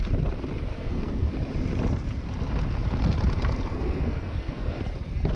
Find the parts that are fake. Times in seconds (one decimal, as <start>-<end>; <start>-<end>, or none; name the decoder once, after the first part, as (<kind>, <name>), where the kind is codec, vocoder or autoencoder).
0.7-1.3 (codec, SNAC); 3.7-4.8